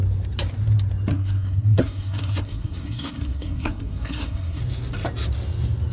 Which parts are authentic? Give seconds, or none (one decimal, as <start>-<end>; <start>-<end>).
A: 0.0-1.1; 4.6-5.9